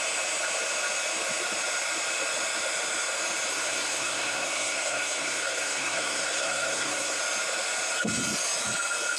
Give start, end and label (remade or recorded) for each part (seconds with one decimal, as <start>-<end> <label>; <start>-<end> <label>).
0.0-3.5 recorded; 3.5-7.2 remade; 7.2-9.2 recorded